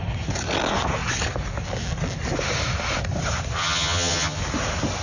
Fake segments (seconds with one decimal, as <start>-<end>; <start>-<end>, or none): 3.6-4.4